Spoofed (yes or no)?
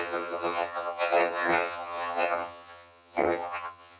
yes